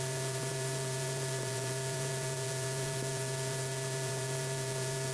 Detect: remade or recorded remade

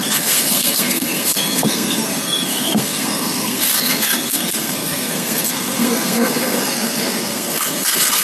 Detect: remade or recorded remade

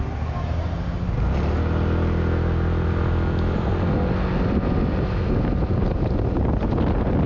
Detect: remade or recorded recorded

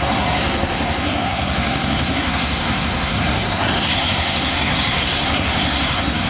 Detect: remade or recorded remade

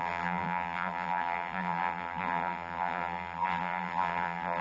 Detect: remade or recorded remade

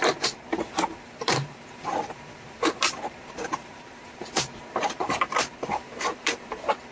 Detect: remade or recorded remade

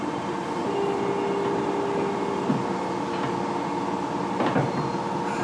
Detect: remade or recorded recorded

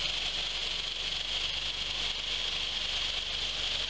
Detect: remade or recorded recorded